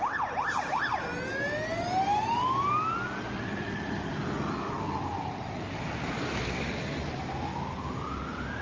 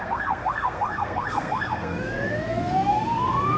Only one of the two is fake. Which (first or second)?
second